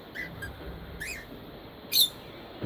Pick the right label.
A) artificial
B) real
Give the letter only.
B